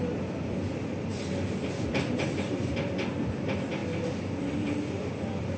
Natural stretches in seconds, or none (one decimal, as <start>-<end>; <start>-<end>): 3.8-4.4